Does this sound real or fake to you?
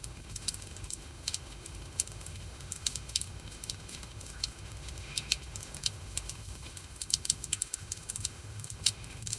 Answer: fake